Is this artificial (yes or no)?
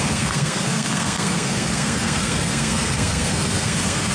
yes